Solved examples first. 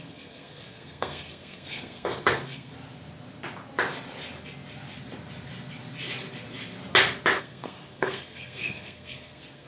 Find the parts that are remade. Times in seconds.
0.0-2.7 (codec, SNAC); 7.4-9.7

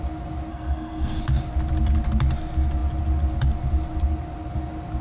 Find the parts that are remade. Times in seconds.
0.5-1.2 (codec, SNAC)

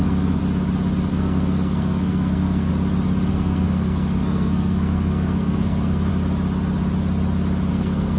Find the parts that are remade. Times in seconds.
0.0-0.4 (codec, SNAC); 1.1-2.7; 3.3-6.1; 7.7-8.2

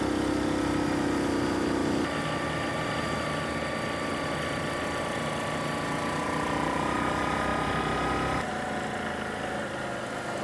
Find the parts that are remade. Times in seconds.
none

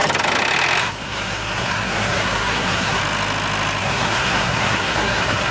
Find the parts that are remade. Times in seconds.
0.8-3.0 (codec, SNAC); 3.8-5.5

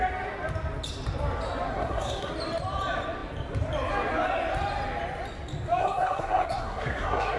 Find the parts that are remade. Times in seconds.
1.7-2.3 (codec, SNAC); 5.8-7.4

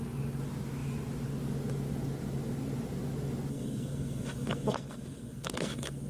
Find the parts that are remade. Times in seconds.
3.5-6.1 (codec, SNAC)

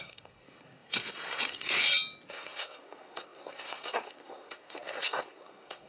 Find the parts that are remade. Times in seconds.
0.0-1.8 (codec, SNAC); 2.3-5.9